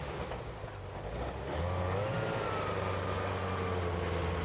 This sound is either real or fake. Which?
real